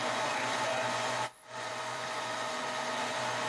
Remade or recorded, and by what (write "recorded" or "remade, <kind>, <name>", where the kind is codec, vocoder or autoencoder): remade, vocoder, Vocos